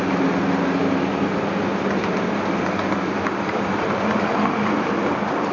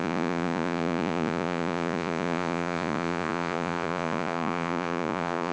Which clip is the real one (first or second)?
first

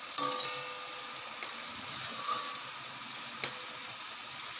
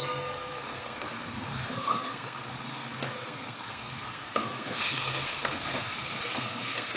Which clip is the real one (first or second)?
first